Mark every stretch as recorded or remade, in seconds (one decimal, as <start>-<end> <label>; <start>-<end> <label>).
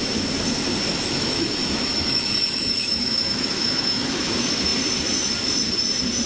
0.0-0.9 recorded; 0.9-4.3 remade; 4.3-6.3 recorded